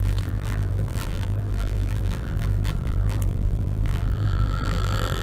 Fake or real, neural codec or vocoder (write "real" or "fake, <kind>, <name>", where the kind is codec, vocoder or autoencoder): fake, vocoder, BigVGAN v2